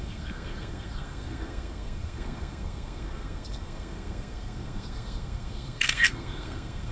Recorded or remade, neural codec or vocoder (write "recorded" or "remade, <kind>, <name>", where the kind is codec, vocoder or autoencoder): remade, codec, SNAC